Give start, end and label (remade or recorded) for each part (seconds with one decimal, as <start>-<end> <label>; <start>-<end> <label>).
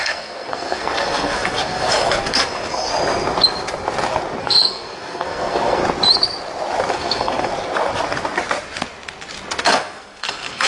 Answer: 0.0-2.9 remade; 2.9-4.4 recorded; 4.4-5.8 remade; 5.8-6.9 recorded; 6.9-7.5 remade; 7.5-9.6 recorded; 9.6-10.7 remade